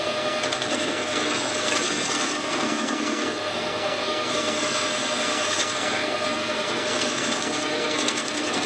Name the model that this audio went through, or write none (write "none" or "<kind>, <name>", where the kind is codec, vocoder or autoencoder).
codec, SNAC